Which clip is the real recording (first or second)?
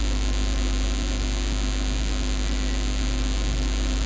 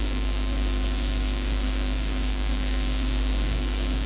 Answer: first